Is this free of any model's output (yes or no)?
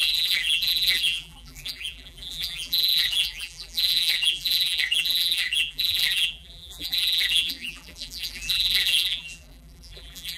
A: no